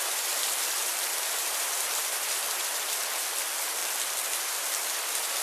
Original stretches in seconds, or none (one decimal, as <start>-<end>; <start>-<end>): 3.8-4.4